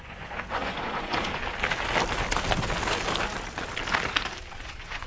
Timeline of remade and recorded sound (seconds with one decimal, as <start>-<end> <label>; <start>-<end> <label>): 0.0-1.4 remade; 1.4-4.5 recorded; 4.5-5.1 remade